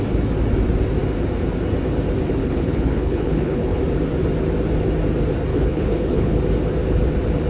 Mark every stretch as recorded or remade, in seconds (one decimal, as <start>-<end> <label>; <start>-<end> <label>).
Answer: 0.0-2.4 recorded; 2.4-3.8 remade; 3.8-5.5 recorded; 5.5-6.4 remade; 6.4-7.5 recorded